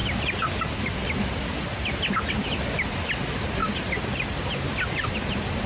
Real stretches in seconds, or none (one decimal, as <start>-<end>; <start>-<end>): 0.0-5.7

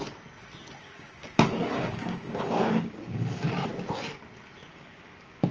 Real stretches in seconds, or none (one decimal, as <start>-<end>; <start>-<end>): 0.0-0.8; 3.5-4.7

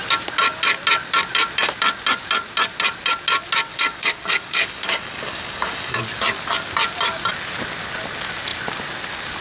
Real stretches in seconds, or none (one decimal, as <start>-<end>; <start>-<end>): 0.0-3.7; 6.0-9.4

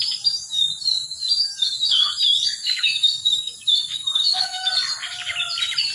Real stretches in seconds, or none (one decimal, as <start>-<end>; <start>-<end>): 0.0-1.4; 2.1-2.6; 4.7-5.9

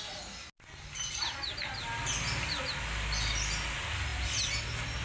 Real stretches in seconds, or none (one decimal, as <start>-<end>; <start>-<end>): 0.0-5.0